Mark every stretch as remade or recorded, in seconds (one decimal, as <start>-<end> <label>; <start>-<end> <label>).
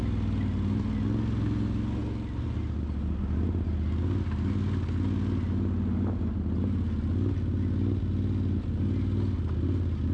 0.0-10.1 recorded